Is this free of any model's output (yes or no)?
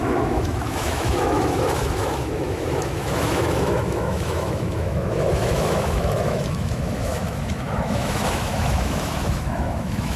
no